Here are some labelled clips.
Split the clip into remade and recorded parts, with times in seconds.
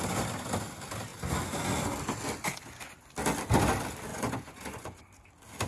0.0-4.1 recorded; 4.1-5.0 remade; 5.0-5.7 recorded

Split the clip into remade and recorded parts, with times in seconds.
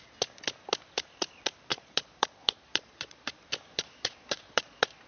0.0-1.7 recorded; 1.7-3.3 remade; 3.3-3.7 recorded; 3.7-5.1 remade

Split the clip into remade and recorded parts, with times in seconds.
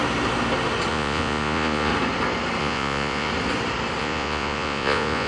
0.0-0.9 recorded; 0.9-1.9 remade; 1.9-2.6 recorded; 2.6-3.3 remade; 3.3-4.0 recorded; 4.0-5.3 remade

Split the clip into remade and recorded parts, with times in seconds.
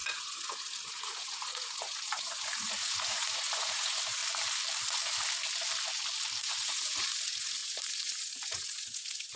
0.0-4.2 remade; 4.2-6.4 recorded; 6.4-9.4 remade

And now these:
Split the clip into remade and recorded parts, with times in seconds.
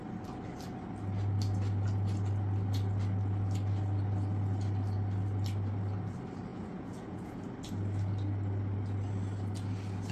0.0-6.5 recorded; 6.5-7.4 remade; 7.4-10.1 recorded